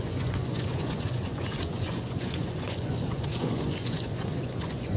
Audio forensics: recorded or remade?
remade